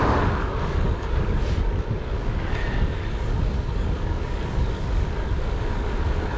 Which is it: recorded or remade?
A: remade